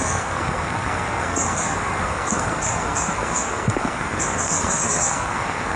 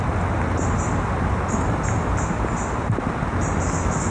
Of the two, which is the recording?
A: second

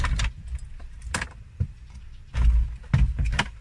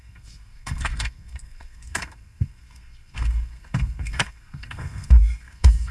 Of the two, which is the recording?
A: first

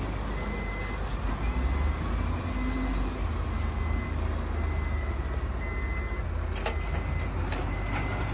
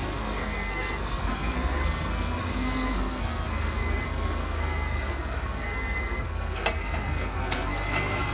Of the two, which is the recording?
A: first